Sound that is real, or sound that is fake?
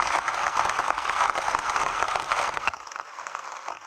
fake